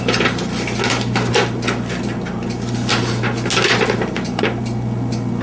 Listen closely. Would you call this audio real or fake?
real